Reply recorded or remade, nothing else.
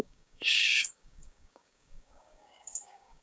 remade